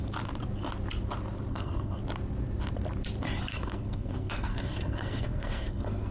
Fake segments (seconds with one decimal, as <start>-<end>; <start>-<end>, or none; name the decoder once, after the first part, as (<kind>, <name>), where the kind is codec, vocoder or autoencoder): 1.5-2.0 (codec, SNAC); 3.5-6.1